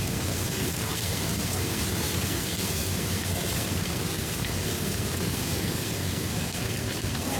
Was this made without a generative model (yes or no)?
no